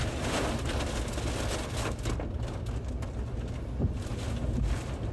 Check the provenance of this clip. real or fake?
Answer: real